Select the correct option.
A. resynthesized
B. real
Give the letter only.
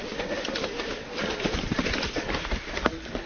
B